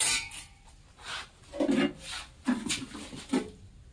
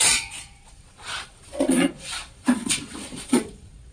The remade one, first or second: second